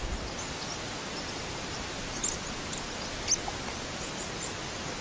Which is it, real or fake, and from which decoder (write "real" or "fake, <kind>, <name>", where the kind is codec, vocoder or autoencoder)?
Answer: real